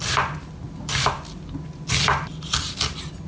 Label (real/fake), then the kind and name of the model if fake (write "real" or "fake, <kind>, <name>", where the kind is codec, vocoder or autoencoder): real